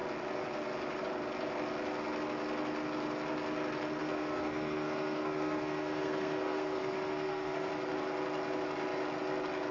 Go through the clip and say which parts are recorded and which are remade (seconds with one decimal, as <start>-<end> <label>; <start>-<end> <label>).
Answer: 0.0-4.0 recorded; 4.0-7.7 remade; 7.7-9.7 recorded